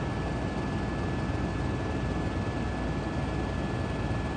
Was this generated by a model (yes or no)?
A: no